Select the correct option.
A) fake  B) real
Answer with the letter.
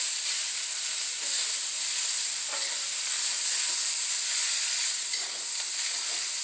B